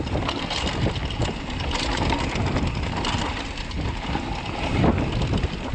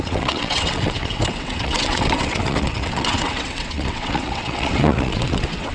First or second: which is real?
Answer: first